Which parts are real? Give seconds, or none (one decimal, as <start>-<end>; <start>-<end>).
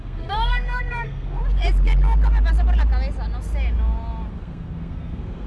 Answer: 1.4-4.3